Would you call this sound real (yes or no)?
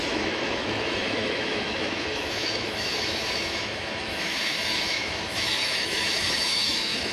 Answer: no